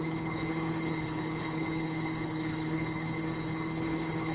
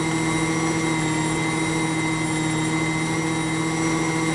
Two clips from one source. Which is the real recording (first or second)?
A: second